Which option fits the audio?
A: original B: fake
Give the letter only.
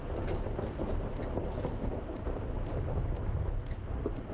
A